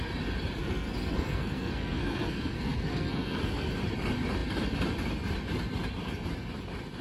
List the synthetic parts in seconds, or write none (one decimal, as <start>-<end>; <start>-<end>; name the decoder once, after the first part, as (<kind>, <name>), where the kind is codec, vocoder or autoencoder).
0.6-3.7 (codec, SNAC)

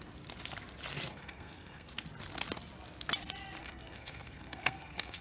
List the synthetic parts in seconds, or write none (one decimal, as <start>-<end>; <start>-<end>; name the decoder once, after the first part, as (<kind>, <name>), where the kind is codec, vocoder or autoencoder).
1.1-1.9 (codec, SNAC); 3.6-5.2

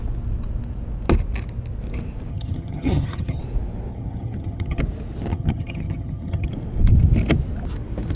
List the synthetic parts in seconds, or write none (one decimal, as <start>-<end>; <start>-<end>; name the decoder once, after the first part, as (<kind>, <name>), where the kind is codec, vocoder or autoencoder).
2.3-3.4 (vocoder, HiFi-GAN); 3.9-4.8; 5.3-6.5

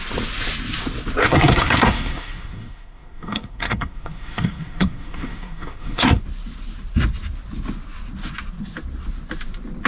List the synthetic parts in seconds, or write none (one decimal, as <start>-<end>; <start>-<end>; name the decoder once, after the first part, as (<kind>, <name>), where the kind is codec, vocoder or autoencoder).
1.2-6.2 (codec, SNAC)

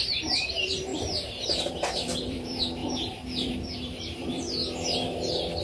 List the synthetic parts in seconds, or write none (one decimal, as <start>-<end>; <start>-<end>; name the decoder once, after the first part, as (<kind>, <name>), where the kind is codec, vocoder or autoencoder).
0.0-2.8 (vocoder, BigVGAN v2); 3.6-4.6